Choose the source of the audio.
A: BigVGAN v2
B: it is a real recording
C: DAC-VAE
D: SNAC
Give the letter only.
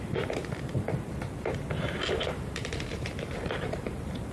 A